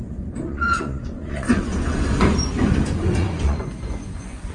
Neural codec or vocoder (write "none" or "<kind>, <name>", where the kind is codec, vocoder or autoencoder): vocoder, Vocos